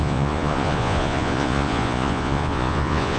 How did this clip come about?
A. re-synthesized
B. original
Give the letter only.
A